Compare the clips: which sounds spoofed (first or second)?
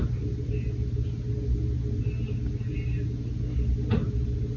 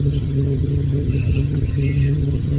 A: second